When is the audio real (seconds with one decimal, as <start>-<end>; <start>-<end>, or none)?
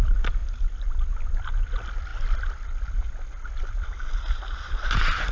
0.0-5.3